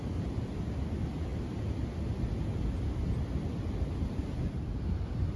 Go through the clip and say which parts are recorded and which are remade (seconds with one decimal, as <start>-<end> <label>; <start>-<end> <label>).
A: 0.0-5.4 recorded